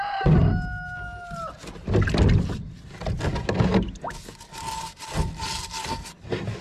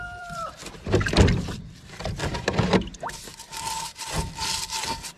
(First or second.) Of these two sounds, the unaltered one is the first